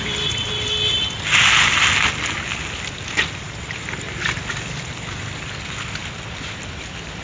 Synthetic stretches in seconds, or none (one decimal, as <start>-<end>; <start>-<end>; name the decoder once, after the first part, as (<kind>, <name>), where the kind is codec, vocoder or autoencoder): none